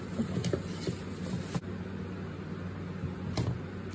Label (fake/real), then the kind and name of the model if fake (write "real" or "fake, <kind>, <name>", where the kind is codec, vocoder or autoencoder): real